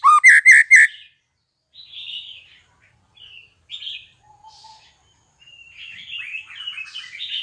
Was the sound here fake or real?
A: real